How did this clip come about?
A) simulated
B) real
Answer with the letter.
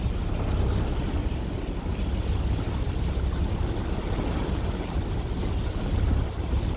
B